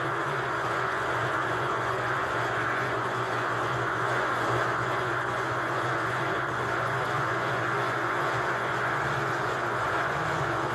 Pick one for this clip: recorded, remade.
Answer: remade